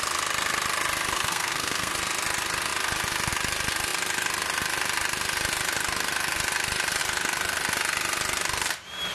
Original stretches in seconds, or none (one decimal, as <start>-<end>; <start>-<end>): 0.0-1.1; 1.9-9.1